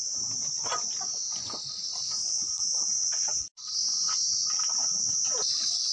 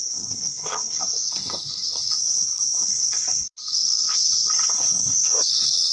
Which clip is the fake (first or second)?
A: second